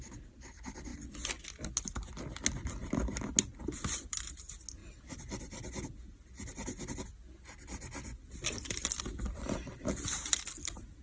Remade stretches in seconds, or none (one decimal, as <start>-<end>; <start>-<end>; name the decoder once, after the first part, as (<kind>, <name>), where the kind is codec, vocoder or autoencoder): none